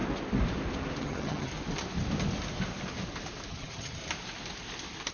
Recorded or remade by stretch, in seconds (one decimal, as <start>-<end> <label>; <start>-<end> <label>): 0.0-1.0 recorded; 1.0-1.5 remade; 1.5-3.5 recorded; 3.5-4.0 remade; 4.0-5.1 recorded